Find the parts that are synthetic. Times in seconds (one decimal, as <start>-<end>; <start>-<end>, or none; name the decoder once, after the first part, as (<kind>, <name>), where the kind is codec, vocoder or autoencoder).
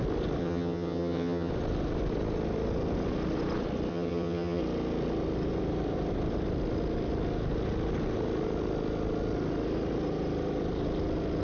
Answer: 0.4-1.5 (vocoder, HiFi-GAN); 3.9-4.6